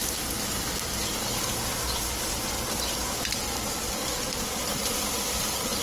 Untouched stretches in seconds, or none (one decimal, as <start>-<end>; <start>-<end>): 0.0-5.8